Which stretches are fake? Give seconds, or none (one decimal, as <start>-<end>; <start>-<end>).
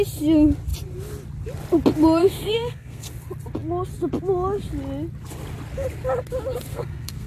2.2-3.1; 6.7-7.3